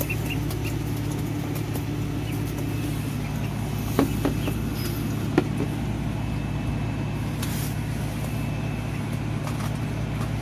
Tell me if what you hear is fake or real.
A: real